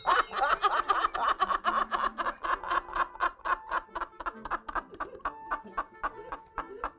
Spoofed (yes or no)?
no